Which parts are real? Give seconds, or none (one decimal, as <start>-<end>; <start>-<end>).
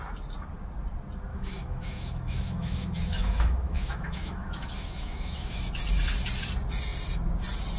0.0-1.3; 5.6-7.8